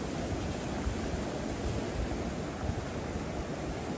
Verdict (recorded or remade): recorded